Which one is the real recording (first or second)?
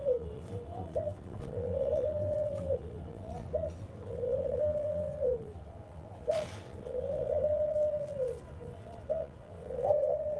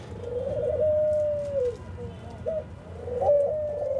second